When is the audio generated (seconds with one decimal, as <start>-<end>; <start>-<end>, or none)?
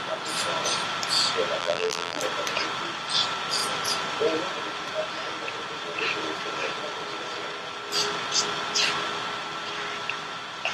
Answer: 1.6-2.2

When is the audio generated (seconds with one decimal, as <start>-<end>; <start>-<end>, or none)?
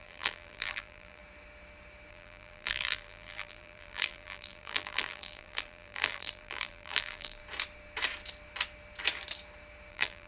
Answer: 0.0-1.2; 2.1-7.4; 9.9-10.3